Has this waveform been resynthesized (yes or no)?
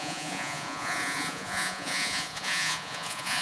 yes